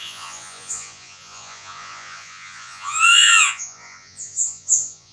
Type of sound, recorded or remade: remade